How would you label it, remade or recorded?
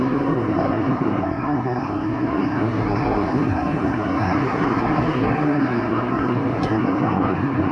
remade